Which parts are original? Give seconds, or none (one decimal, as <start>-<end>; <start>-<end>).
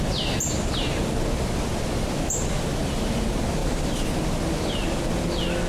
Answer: 0.0-5.7